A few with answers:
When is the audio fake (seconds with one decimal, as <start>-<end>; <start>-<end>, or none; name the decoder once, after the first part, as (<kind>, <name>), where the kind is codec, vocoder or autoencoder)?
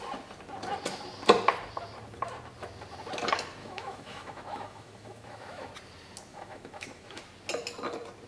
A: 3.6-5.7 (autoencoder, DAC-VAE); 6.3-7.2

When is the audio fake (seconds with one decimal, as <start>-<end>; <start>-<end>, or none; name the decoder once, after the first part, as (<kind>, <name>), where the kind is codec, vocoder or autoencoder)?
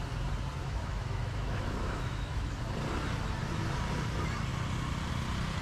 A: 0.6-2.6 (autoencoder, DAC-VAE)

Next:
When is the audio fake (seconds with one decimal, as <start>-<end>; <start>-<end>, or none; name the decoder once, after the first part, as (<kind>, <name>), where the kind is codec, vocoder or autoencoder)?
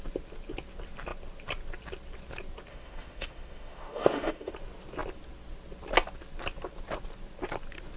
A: 2.7-4.5 (autoencoder, DAC-VAE)